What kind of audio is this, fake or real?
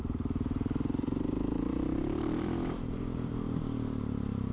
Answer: fake